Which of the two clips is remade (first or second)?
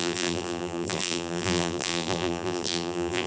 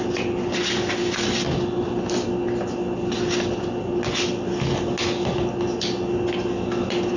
first